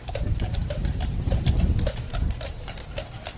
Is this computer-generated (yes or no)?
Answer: yes